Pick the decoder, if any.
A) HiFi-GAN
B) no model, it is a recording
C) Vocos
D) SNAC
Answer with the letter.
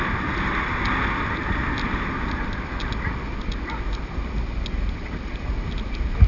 B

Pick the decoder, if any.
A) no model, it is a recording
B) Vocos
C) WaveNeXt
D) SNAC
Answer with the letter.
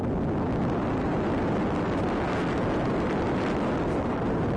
A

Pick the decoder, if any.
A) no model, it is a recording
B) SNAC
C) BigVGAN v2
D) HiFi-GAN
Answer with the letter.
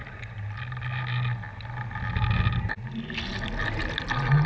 A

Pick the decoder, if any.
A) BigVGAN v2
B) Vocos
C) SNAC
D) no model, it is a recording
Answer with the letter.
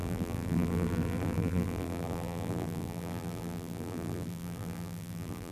A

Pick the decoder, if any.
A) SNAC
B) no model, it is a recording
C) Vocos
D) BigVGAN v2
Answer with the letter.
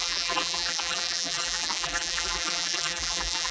D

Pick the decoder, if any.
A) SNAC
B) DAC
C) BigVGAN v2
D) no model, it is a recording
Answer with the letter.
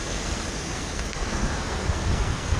A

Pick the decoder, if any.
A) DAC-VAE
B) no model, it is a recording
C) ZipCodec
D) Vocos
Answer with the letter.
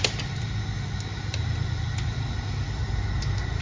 B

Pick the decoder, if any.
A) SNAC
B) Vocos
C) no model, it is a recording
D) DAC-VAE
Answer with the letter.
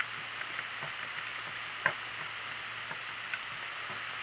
C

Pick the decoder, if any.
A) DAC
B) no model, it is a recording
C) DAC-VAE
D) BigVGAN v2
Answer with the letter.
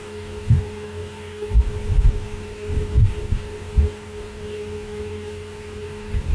A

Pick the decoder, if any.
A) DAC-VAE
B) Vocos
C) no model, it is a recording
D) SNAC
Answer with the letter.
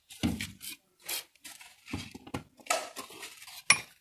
C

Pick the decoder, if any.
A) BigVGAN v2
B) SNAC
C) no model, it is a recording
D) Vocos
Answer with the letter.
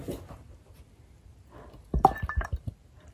C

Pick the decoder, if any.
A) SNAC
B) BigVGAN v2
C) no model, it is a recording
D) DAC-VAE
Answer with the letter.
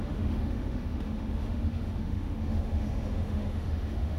D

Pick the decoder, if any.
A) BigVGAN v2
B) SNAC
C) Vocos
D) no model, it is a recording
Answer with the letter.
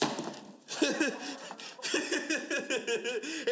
D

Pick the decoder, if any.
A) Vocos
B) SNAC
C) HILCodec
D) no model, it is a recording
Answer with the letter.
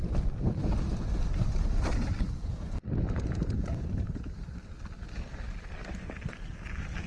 D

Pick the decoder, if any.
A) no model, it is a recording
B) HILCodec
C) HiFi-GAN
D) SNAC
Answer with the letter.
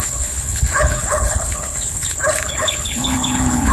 B